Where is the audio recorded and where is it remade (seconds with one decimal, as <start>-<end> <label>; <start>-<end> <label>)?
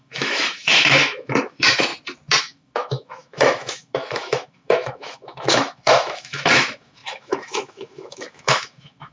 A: 0.0-1.9 remade; 1.9-2.4 recorded; 2.4-9.1 remade